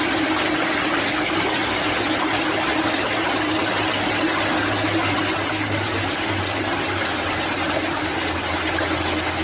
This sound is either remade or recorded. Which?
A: recorded